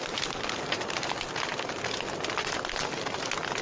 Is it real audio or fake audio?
real